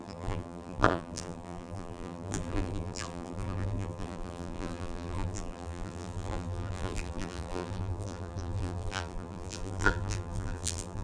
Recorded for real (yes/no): no